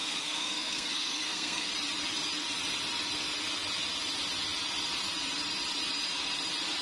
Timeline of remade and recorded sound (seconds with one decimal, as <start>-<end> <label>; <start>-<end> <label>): 0.0-1.7 remade; 1.7-6.8 recorded